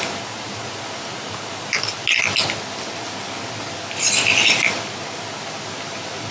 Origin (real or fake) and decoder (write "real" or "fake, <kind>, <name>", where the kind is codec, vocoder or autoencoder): real